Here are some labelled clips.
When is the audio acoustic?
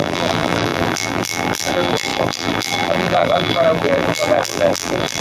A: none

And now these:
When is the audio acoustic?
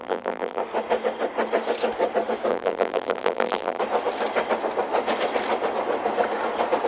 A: 0.6-2.5; 3.8-6.9